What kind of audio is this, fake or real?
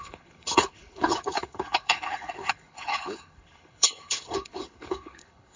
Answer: fake